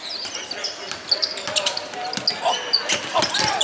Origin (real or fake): real